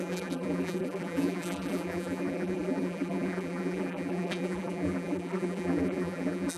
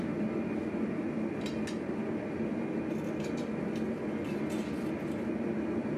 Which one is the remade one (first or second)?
first